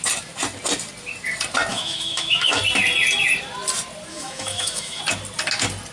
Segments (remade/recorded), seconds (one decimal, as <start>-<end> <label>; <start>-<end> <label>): 0.0-1.7 recorded; 1.7-2.6 remade; 2.6-4.1 recorded; 4.1-5.0 remade; 5.0-5.9 recorded